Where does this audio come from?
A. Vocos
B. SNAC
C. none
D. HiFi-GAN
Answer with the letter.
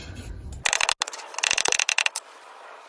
C